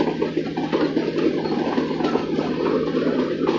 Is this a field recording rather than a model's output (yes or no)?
yes